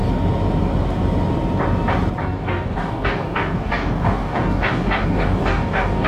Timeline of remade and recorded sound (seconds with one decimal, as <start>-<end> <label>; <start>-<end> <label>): 0.0-2.2 recorded; 2.2-6.1 remade